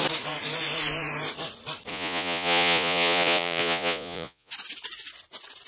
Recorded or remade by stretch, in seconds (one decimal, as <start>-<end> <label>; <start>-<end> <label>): 0.0-1.9 recorded; 1.9-4.5 remade; 4.5-5.7 recorded